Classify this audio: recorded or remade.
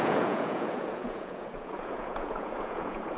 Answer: remade